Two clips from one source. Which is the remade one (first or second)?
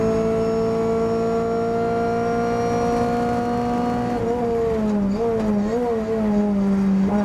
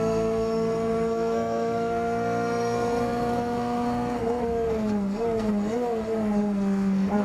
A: second